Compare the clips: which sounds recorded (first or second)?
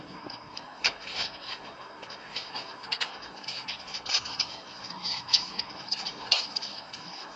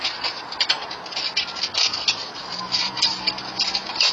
second